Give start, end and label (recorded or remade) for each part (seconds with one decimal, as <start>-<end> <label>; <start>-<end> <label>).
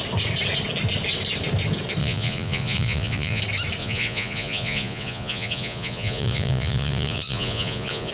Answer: 0.0-2.0 recorded; 2.0-3.4 remade; 3.4-3.8 recorded; 3.8-8.1 remade